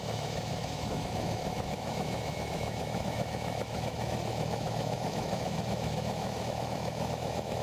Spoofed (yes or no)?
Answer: yes